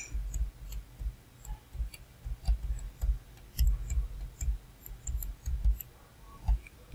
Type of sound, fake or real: real